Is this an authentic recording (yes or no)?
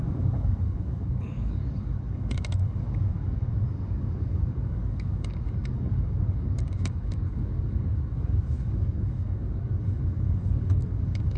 no